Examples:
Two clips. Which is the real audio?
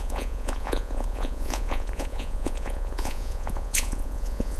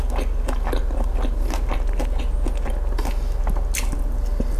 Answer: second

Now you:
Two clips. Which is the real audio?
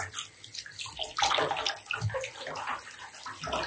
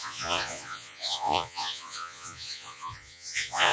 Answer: first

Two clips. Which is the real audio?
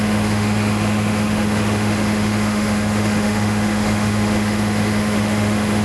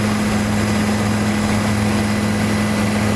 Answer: second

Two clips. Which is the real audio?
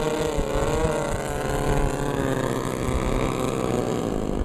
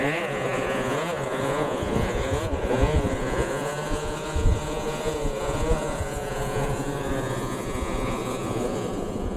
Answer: first